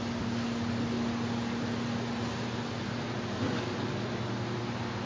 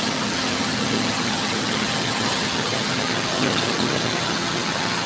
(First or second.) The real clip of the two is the first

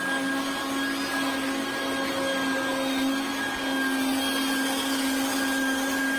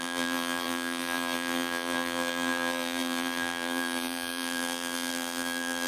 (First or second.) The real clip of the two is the first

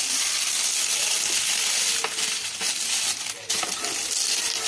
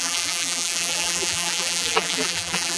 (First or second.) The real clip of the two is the first